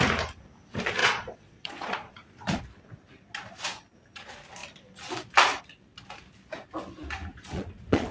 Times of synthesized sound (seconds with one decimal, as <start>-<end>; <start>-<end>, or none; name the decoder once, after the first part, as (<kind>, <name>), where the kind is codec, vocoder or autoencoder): 1.0-2.6 (vocoder, Vocos); 7.3-8.1